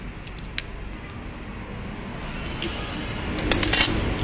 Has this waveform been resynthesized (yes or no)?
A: no